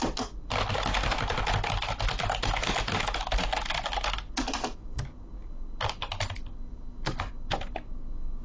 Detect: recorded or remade recorded